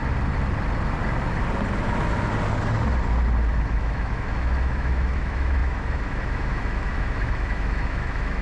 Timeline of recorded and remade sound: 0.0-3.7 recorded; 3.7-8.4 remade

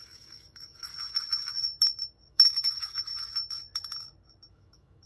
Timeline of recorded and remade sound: 0.0-0.9 remade; 0.9-2.3 recorded; 2.3-3.1 remade; 3.1-4.5 recorded; 4.5-5.1 remade

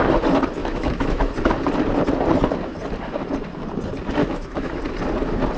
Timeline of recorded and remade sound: 0.0-0.6 recorded; 0.6-1.3 remade; 1.3-4.2 recorded; 4.2-4.8 remade; 4.8-5.6 recorded

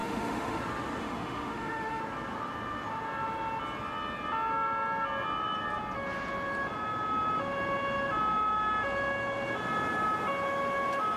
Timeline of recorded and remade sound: 0.0-0.6 remade; 0.6-1.0 recorded; 1.0-2.0 remade; 2.0-11.2 recorded